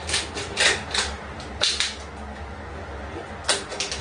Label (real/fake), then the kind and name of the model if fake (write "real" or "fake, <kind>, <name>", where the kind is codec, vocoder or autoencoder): real